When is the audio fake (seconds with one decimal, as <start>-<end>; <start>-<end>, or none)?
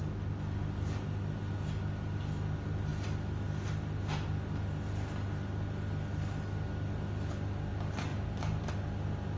8.1-8.7